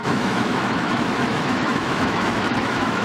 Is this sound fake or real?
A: fake